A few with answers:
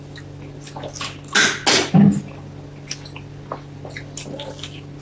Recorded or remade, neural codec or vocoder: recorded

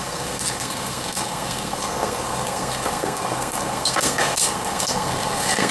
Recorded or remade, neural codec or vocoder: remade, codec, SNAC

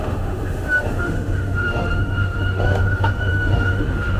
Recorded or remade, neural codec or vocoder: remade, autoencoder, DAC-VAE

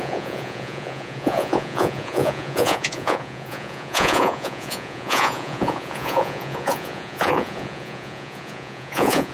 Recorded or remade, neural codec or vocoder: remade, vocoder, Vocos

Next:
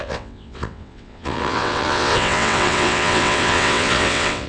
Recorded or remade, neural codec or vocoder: remade, vocoder, WaveNeXt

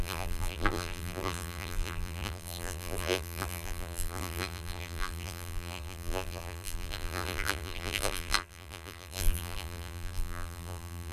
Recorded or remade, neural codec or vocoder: remade, vocoder, BigVGAN v2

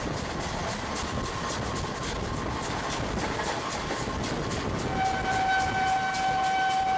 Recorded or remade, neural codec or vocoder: recorded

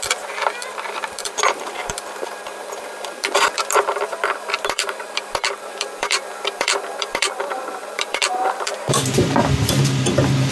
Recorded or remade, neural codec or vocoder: remade, vocoder, BigVGAN v2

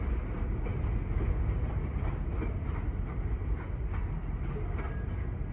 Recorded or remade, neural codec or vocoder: recorded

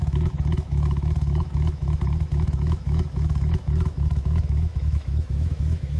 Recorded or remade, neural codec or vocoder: remade, autoencoder, DAC-VAE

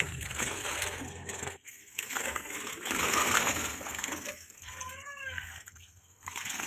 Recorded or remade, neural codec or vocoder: remade, codec, SNAC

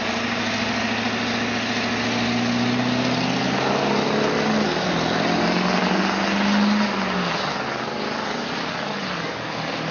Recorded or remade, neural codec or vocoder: recorded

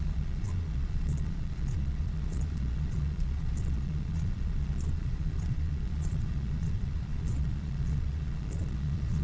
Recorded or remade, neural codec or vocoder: remade, vocoder, Vocos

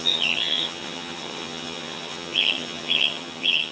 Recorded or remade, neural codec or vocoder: remade, vocoder, HiFi-GAN